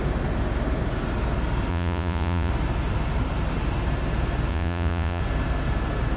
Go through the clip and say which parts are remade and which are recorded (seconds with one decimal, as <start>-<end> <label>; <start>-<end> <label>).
0.0-1.7 recorded; 1.7-2.5 remade; 2.5-4.5 recorded; 4.5-5.2 remade; 5.2-6.2 recorded